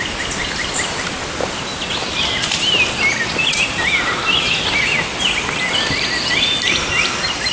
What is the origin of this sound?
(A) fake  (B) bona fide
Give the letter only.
B